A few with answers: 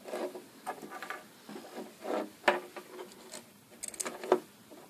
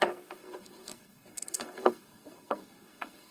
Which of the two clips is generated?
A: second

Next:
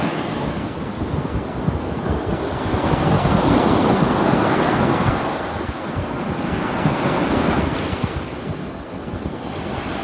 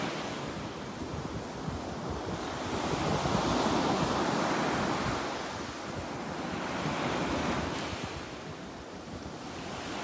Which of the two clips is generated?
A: first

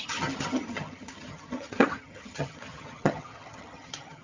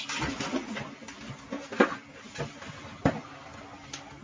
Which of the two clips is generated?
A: first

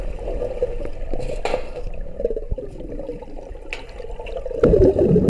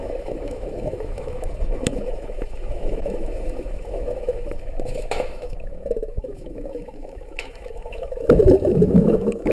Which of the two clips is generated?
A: second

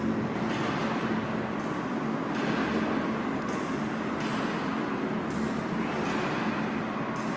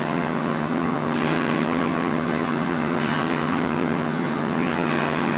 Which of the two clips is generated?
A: second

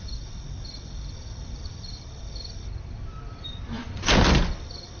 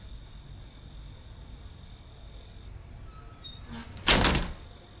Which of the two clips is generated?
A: first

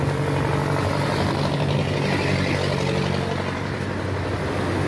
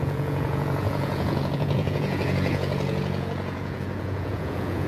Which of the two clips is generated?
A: second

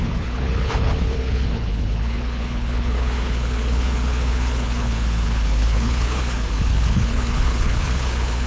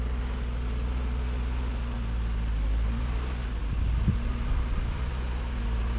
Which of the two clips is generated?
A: first